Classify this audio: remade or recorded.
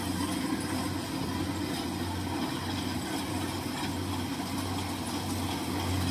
recorded